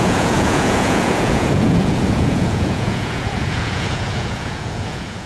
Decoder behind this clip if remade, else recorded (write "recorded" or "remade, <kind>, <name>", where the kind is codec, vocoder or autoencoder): remade, vocoder, Vocos